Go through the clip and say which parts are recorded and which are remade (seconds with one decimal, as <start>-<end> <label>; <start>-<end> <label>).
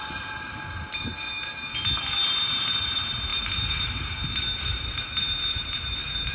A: 0.0-1.1 remade; 1.1-2.4 recorded; 2.4-6.3 remade